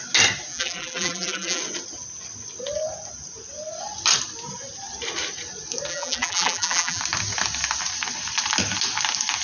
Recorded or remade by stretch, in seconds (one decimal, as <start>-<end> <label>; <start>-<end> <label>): 0.0-0.5 recorded; 0.5-1.6 remade; 1.6-5.9 recorded; 5.9-7.0 remade; 7.0-9.4 recorded